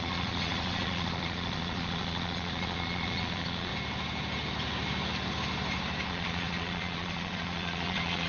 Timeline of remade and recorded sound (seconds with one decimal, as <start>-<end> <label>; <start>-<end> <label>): 0.0-3.7 remade; 3.7-6.1 recorded; 6.1-8.3 remade